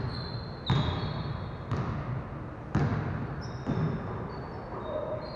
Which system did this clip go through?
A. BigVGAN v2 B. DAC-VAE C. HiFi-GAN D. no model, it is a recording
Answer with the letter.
D